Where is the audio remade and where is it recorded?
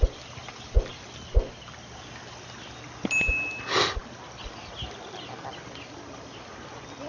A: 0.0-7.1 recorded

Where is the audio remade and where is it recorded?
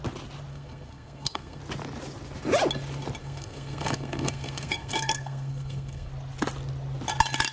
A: 0.0-0.5 recorded; 0.5-1.6 remade; 1.6-3.2 recorded; 3.2-6.1 remade; 6.1-7.5 recorded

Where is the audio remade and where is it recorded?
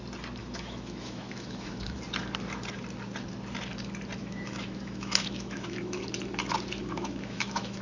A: 0.0-0.4 recorded; 0.4-2.0 remade; 2.0-4.2 recorded; 4.2-6.0 remade; 6.0-6.8 recorded; 6.8-7.8 remade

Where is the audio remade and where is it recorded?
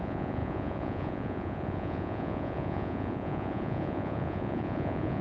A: 0.0-5.2 remade